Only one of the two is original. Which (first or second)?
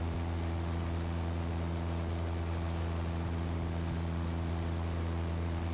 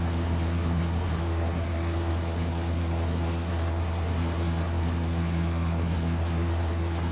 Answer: first